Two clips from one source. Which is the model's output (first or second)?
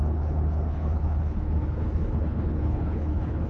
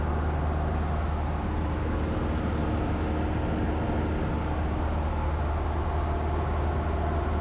first